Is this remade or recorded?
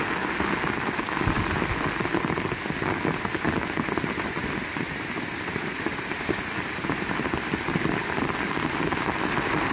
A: recorded